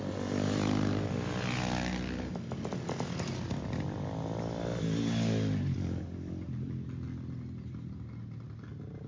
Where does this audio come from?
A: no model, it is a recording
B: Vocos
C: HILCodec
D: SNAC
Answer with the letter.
A